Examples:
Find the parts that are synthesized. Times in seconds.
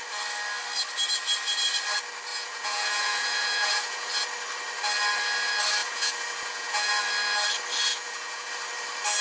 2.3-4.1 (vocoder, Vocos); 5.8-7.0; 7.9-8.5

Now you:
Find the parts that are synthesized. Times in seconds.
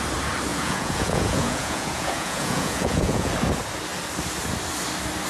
0.5-3.3 (vocoder, Vocos)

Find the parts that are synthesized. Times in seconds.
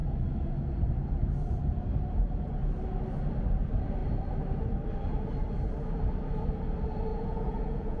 7.1-8.0 (vocoder, Vocos)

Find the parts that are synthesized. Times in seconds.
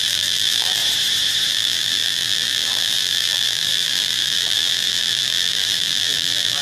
0.0-0.8 (vocoder, BigVGAN v2); 1.5-6.6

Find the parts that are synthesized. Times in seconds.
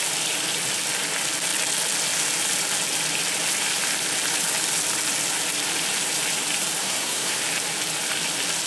6.8-7.4 (codec, SNAC)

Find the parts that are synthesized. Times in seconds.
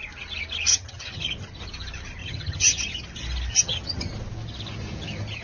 0.7-1.2 (vocoder, HiFi-GAN); 2.2-2.8; 3.5-4.1